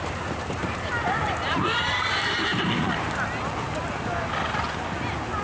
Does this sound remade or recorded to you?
recorded